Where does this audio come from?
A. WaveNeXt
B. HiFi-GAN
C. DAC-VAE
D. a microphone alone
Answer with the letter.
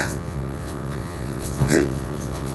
A